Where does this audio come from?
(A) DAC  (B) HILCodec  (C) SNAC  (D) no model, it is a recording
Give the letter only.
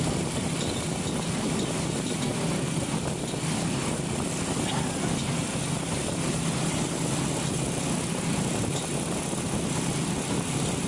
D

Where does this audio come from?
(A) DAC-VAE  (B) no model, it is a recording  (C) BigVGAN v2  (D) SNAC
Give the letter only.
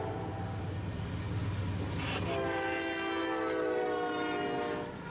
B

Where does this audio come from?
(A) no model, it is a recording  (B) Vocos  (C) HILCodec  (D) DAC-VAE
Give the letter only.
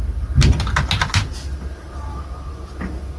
A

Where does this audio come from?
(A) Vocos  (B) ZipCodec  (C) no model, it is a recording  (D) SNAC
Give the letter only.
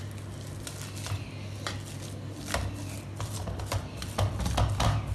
C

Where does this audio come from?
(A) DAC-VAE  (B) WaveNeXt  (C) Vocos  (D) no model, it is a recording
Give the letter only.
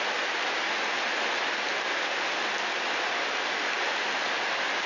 D